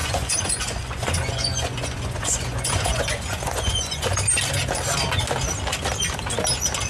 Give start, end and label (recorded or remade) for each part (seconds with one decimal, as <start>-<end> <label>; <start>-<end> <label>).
0.0-4.1 remade; 4.1-6.9 recorded